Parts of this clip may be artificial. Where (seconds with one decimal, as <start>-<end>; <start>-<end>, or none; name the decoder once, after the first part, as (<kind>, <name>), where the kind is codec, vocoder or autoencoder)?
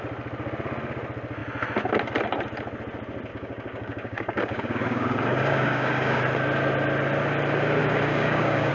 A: 3.3-6.2 (codec, DAC); 7.8-8.7